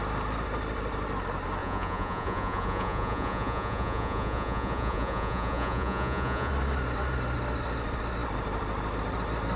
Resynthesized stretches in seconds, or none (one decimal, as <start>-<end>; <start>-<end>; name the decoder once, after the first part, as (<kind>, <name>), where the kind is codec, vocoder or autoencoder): 1.6-6.5 (vocoder, Vocos)